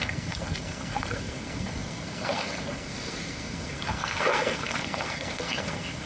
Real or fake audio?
fake